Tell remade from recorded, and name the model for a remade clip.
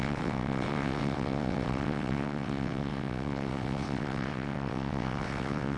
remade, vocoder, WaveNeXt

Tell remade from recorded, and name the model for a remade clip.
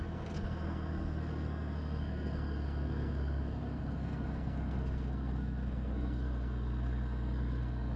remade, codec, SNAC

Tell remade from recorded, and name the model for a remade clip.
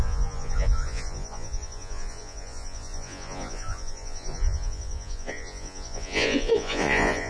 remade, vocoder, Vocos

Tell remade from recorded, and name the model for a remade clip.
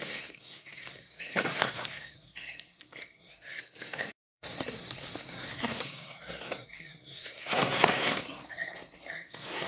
remade, codec, SNAC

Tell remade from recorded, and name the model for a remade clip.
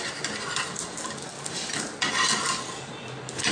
recorded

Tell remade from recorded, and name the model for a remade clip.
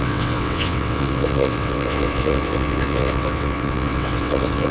remade, vocoder, WaveNeXt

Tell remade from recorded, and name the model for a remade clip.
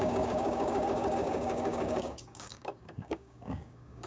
remade, codec, DAC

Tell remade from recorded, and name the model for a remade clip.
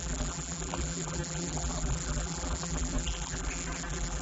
remade, vocoder, BigVGAN v2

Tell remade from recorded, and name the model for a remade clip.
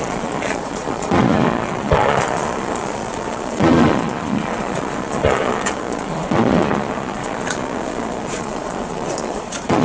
remade, vocoder, Vocos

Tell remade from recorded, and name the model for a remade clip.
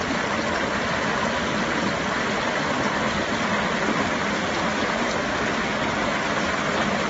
recorded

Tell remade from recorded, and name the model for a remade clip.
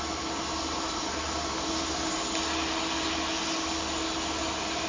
recorded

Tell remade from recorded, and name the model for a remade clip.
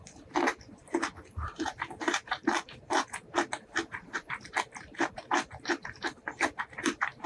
remade, vocoder, BigVGAN v2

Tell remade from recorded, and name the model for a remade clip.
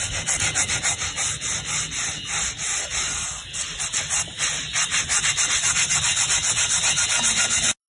recorded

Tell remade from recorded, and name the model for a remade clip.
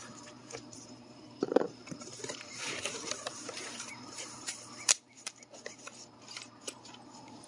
remade, vocoder, BigVGAN v2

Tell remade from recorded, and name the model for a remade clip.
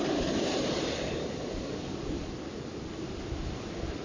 recorded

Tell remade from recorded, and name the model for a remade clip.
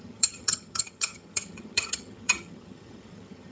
remade, vocoder, HiFi-GAN